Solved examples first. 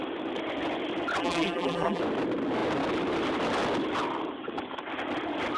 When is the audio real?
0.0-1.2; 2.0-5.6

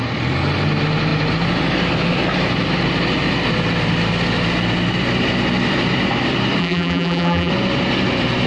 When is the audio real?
0.0-6.6; 7.5-8.5

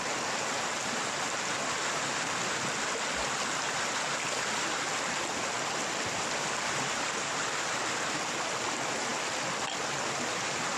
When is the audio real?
0.0-10.8

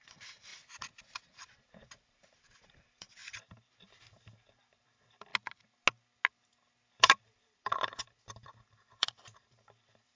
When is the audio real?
0.5-1.3; 5.3-7.0